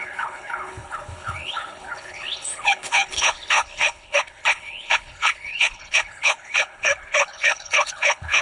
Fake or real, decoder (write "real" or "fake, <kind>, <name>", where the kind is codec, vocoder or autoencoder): fake, codec, HILCodec